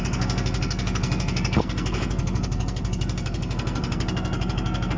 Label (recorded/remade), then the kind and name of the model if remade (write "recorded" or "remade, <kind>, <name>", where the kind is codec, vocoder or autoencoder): remade, codec, SNAC